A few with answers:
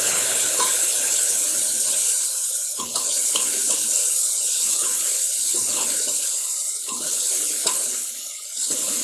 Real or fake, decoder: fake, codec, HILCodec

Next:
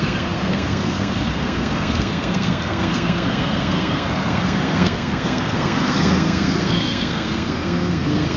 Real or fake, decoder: fake, codec, SNAC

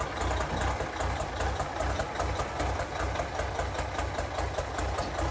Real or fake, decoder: real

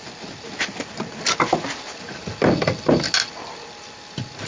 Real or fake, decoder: real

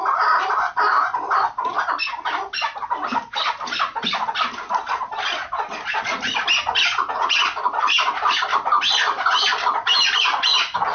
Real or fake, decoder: real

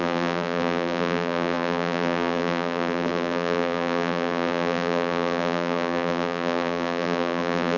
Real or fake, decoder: fake, vocoder, BigVGAN v2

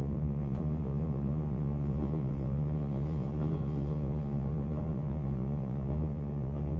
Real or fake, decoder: fake, vocoder, Vocos